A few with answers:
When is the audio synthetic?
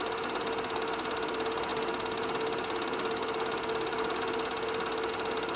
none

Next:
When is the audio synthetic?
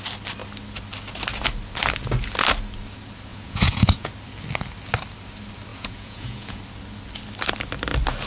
3.3-4.1 (vocoder, Vocos); 5.7-6.6